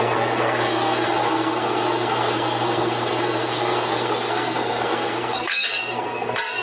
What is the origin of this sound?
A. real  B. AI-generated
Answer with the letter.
B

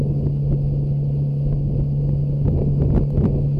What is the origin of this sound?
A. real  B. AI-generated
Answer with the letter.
A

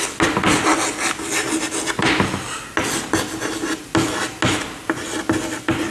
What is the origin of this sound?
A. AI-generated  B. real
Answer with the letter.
B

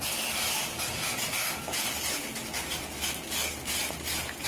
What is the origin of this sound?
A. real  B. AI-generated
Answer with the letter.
A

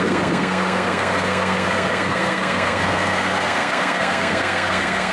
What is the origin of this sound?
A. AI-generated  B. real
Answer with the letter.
A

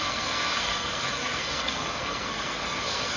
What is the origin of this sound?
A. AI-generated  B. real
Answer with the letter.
A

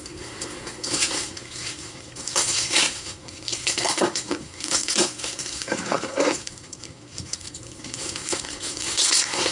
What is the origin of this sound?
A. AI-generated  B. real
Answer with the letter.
A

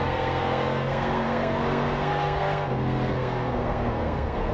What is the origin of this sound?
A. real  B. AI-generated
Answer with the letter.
B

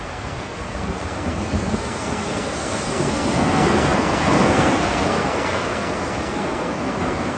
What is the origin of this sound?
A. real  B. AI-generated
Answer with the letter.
B